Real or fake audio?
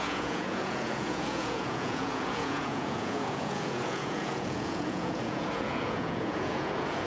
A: fake